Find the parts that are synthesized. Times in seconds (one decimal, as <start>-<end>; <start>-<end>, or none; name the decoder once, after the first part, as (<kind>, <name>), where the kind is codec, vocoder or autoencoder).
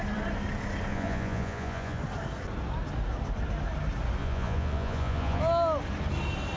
0.9-2.0 (vocoder, Vocos); 4.2-5.4